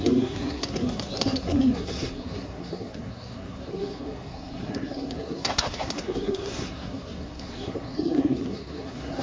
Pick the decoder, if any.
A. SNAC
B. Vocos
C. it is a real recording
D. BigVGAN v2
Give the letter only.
A